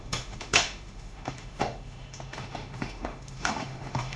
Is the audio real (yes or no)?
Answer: no